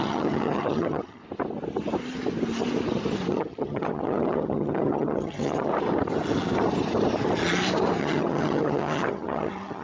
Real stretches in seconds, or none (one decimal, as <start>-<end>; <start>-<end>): 1.2-3.3; 5.7-8.0

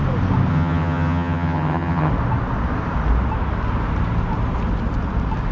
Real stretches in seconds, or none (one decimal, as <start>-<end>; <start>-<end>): 0.0-0.5; 2.1-5.5

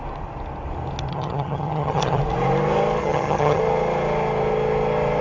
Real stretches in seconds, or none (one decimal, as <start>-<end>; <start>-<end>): 0.0-1.1; 2.2-3.0; 3.6-5.2